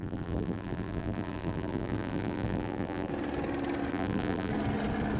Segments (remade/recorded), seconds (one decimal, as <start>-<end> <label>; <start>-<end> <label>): 0.0-3.1 remade; 3.1-3.9 recorded; 3.9-4.5 remade; 4.5-5.2 recorded